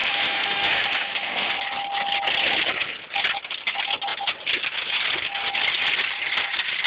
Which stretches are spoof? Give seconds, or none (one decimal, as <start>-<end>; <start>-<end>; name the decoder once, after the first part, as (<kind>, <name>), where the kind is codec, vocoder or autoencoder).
0.0-1.5 (autoencoder, DAC-VAE)